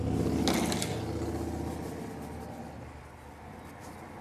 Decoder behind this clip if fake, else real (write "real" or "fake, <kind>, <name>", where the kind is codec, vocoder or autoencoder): real